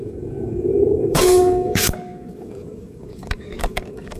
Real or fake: fake